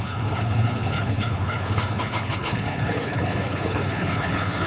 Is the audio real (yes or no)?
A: no